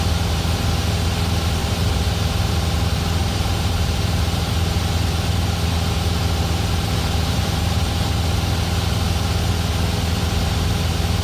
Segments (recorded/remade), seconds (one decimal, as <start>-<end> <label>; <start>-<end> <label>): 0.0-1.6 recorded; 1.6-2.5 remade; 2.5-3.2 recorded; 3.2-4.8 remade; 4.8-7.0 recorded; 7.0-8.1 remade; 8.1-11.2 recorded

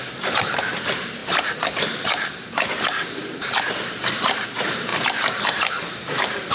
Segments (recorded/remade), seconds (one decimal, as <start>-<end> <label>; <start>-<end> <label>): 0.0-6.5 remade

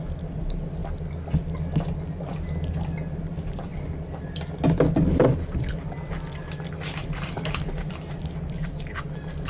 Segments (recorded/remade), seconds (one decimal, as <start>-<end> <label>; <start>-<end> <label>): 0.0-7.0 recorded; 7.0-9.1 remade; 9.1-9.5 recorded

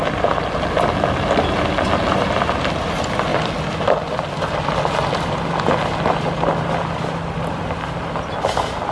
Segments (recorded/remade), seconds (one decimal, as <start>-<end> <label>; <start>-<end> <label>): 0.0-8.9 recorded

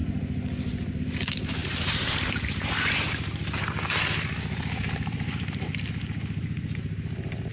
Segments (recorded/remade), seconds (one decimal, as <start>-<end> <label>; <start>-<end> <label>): 0.0-1.0 recorded; 1.0-7.5 remade

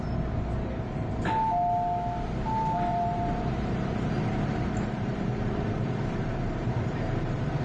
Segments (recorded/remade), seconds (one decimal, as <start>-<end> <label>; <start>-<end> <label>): 0.0-2.9 recorded; 2.9-7.6 remade

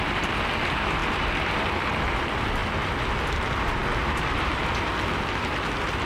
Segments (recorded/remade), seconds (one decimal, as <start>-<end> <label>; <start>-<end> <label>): 0.0-1.0 recorded; 1.0-2.2 remade; 2.2-6.1 recorded